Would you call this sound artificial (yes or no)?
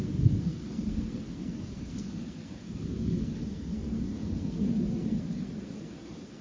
yes